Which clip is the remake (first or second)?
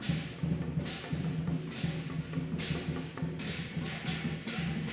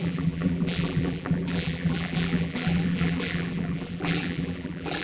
second